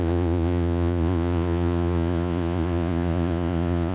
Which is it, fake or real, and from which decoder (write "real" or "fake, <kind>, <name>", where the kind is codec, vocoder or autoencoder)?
fake, vocoder, Vocos